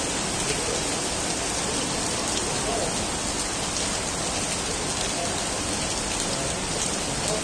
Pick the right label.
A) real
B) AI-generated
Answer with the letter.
A